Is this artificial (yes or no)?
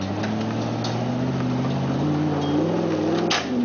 no